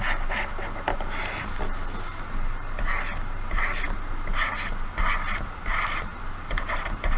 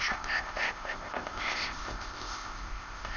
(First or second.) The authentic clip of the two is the first